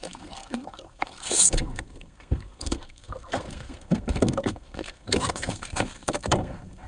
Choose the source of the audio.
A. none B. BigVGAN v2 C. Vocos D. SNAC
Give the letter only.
D